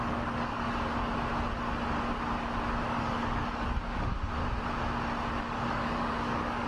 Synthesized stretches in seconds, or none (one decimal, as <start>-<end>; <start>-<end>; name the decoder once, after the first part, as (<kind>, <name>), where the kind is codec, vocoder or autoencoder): 0.0-1.1 (codec, DAC); 2.8-4.4; 5.4-6.7